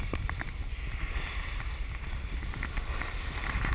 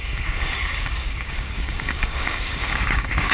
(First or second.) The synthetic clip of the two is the second